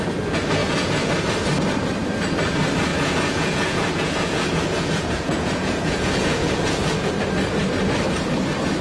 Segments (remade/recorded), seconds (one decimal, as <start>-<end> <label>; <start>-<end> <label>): 0.0-0.6 recorded; 0.6-1.1 remade; 1.1-2.9 recorded; 2.9-7.1 remade; 7.1-8.8 recorded